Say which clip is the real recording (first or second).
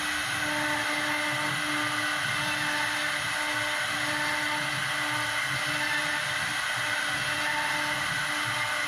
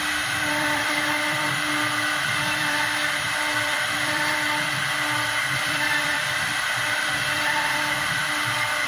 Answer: first